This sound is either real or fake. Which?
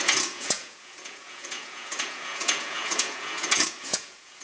fake